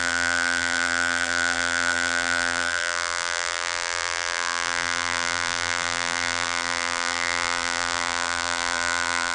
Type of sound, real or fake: fake